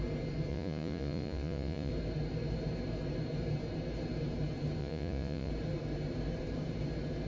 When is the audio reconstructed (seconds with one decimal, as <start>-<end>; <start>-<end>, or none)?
0.5-1.9; 4.8-5.5